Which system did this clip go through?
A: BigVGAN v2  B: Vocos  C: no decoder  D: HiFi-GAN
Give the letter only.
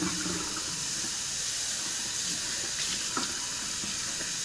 C